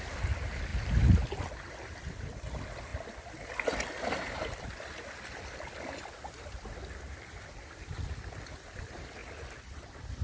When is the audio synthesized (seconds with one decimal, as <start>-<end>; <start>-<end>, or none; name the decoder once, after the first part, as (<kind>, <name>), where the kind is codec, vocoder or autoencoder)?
none